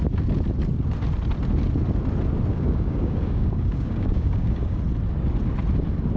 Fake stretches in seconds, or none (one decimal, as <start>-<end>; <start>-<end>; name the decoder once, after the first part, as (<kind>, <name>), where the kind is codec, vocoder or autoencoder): 2.5-4.8 (codec, DAC)